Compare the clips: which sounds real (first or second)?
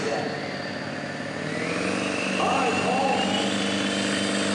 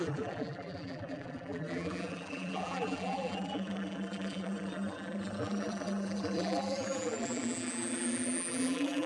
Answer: first